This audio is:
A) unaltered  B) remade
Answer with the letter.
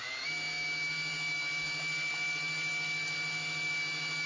A